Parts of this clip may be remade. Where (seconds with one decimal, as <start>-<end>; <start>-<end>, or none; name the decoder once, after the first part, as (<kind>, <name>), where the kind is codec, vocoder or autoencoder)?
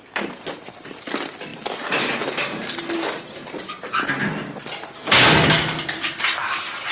none